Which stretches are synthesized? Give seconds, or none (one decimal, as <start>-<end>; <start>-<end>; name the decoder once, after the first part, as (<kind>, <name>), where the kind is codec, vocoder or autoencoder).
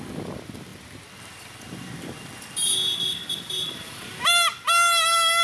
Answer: none